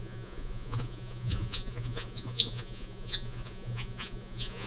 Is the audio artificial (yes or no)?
yes